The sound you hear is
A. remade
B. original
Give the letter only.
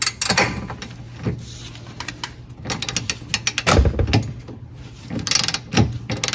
B